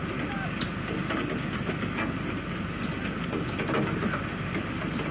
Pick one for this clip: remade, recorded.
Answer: recorded